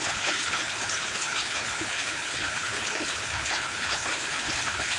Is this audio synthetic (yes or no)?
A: yes